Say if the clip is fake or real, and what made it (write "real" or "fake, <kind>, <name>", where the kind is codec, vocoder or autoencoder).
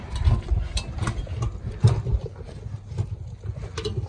real